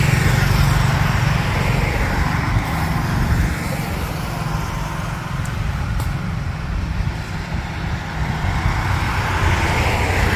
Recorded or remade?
recorded